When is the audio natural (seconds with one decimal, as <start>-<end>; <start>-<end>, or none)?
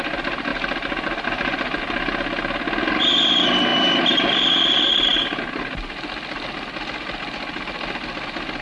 0.0-8.6